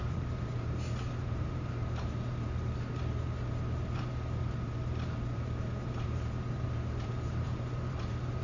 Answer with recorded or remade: remade